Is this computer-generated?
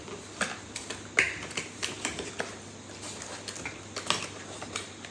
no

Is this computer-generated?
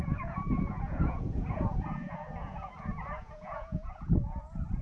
yes